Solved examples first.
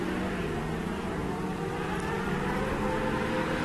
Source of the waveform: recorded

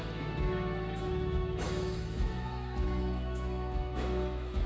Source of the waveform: remade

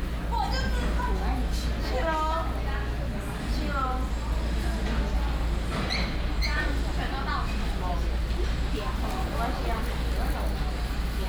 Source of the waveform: recorded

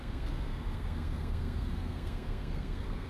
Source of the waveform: remade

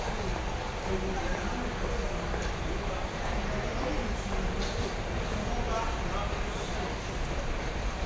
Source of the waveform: recorded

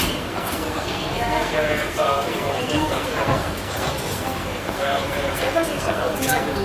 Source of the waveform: remade